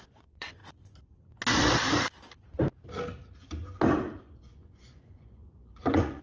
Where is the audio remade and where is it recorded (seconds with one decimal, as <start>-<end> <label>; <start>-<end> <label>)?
0.0-0.6 remade; 0.6-4.2 recorded; 4.2-6.2 remade